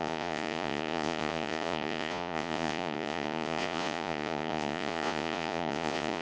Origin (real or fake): fake